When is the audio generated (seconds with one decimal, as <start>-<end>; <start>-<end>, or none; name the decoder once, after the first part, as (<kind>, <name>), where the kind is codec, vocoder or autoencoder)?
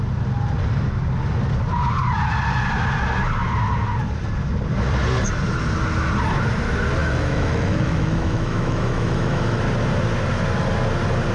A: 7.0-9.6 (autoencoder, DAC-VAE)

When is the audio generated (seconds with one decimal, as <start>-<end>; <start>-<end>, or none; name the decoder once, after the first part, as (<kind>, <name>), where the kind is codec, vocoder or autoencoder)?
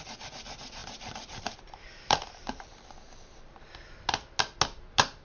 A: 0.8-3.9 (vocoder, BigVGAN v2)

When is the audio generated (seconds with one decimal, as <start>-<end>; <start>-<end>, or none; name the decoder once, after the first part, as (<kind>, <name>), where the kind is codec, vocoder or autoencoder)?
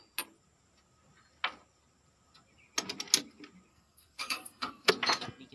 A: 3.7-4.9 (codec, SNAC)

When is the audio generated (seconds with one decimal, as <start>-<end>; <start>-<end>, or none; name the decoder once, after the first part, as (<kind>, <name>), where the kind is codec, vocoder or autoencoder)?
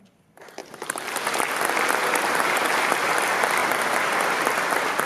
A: 3.6-4.2 (vocoder, BigVGAN v2)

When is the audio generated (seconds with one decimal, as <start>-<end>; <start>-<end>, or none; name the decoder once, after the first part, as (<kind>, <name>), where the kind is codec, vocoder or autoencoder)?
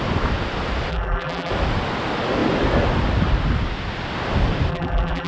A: 0.9-1.5 (vocoder, BigVGAN v2); 4.7-5.3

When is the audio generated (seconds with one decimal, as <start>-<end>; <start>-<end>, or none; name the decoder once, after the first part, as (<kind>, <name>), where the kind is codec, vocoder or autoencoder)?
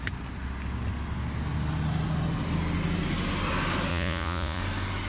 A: 3.9-4.6 (vocoder, Vocos)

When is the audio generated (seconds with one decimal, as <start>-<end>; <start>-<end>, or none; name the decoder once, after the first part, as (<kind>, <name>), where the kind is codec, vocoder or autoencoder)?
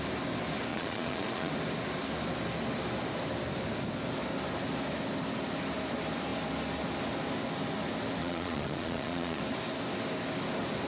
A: 0.7-1.5 (vocoder, Vocos); 8.2-9.4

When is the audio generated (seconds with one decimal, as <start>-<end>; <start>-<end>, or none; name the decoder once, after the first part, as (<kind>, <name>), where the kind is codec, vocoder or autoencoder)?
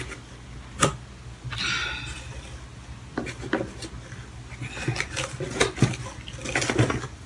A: none